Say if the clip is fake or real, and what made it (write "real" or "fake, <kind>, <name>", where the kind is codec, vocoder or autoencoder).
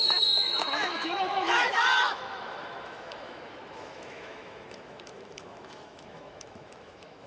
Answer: fake, autoencoder, DAC-VAE